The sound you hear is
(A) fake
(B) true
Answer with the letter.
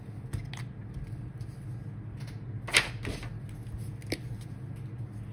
B